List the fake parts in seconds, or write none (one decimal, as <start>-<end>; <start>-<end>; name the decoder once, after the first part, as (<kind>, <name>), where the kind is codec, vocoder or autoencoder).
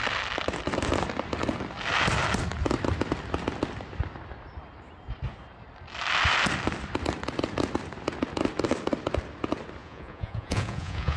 9.8-11.2 (vocoder, Vocos)